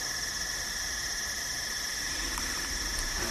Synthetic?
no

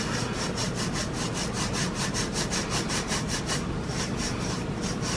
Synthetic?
no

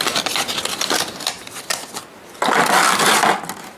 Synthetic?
no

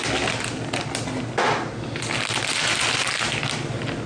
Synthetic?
no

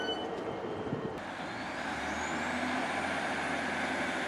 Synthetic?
no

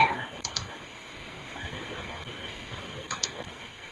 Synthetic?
yes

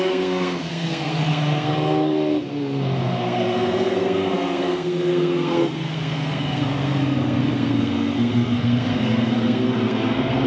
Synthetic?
yes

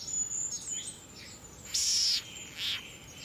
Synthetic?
no